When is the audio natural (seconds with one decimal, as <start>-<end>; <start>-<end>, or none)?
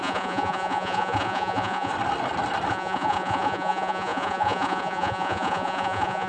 1.9-2.7